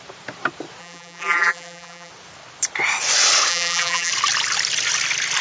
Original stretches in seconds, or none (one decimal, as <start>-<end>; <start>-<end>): 0.0-0.8; 2.1-3.5; 4.1-5.4